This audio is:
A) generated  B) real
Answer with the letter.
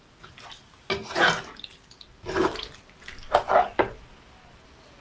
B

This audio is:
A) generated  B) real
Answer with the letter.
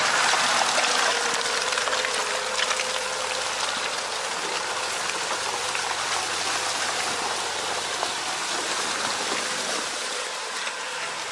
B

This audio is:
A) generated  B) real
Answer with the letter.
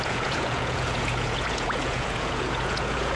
A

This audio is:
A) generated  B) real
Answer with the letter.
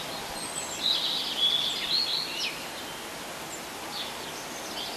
B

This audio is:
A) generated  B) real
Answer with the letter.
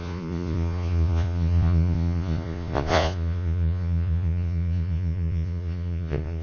A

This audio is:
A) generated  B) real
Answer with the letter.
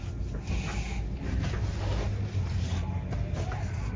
B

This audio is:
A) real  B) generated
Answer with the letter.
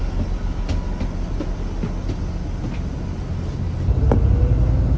A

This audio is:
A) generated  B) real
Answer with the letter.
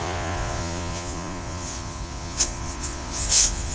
A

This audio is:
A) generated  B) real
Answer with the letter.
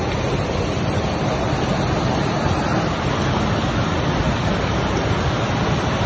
B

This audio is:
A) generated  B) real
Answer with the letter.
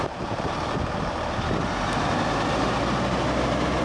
B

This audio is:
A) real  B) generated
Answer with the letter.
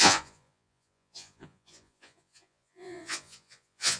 B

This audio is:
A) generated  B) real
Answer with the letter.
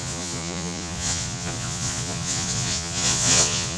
A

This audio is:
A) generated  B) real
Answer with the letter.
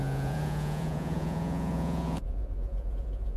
A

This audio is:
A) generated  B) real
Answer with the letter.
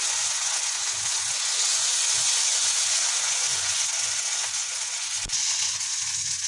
A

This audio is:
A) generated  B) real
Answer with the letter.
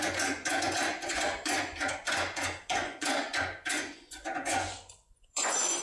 A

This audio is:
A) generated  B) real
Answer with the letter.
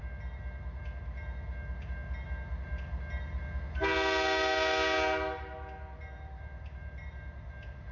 B